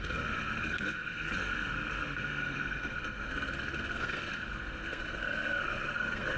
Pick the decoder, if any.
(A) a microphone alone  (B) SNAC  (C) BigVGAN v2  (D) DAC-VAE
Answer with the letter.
B